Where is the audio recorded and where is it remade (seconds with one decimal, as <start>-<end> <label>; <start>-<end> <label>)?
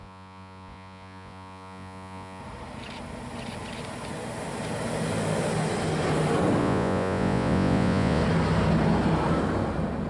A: 0.0-2.4 remade; 2.4-6.6 recorded; 6.6-8.2 remade; 8.2-10.1 recorded